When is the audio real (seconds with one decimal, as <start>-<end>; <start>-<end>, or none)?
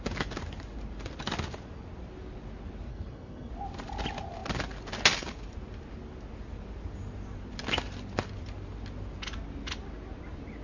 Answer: 0.0-2.9; 3.5-10.6